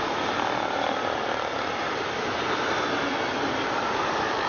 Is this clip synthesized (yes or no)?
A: no